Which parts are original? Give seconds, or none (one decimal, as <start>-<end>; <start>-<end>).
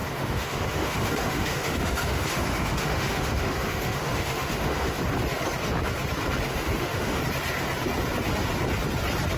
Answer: 5.0-6.5; 7.2-9.4